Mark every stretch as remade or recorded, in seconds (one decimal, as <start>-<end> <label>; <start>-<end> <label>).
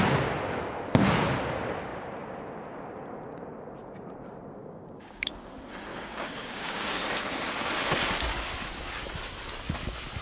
0.0-4.6 recorded; 4.6-5.3 remade; 5.3-5.9 recorded; 5.9-7.0 remade; 7.0-10.2 recorded